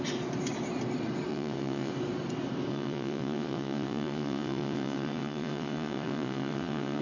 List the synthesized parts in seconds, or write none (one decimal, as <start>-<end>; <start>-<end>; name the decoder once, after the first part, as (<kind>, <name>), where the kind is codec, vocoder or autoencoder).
1.3-1.9 (vocoder, WaveNeXt); 2.7-7.0

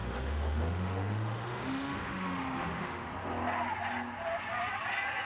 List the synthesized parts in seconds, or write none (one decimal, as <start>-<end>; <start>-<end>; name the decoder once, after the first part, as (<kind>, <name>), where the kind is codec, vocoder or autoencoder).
0.0-3.1 (autoencoder, DAC-VAE)

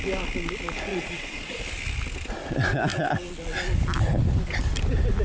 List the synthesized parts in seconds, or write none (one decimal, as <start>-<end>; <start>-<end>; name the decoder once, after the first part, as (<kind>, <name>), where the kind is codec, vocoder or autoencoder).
0.9-1.6 (vocoder, Vocos)

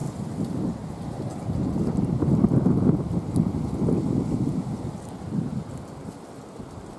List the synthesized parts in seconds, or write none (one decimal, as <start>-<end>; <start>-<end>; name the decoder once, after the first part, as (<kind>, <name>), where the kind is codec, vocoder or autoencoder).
none

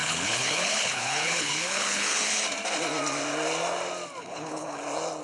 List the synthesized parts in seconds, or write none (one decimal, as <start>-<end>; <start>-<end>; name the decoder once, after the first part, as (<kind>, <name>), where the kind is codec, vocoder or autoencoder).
0.0-2.4 (codec, HILCodec); 4.2-4.8